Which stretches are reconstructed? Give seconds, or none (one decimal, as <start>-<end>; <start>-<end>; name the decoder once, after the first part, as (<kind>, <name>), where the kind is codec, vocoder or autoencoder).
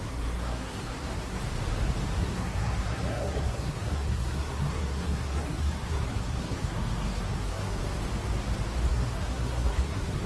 0.0-1.4 (codec, SNAC); 2.2-7.8; 8.9-10.3